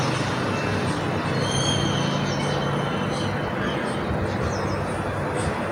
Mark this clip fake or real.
real